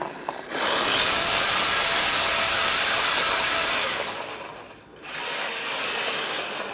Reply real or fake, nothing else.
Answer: real